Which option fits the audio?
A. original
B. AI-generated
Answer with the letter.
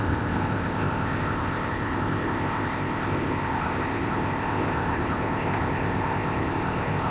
B